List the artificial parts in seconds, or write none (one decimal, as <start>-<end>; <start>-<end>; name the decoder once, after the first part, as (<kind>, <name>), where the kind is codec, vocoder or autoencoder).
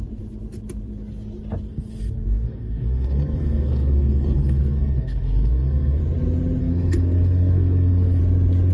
1.7-6.0 (codec, SNAC); 6.6-8.2